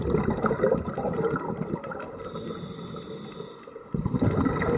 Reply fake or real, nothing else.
real